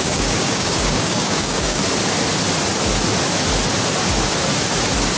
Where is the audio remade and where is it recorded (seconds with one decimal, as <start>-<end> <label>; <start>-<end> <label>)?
0.0-1.8 remade; 1.8-5.2 recorded